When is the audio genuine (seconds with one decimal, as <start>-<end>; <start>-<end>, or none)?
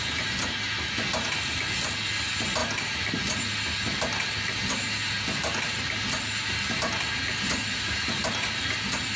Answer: 0.0-9.2